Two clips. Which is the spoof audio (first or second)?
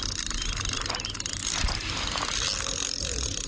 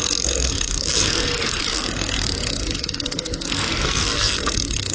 second